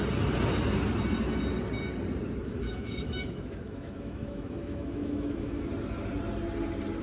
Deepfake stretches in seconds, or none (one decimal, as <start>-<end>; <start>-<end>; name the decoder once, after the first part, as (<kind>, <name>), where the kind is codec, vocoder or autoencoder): 2.4-5.7 (autoencoder, DAC-VAE)